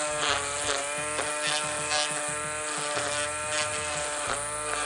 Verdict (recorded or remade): recorded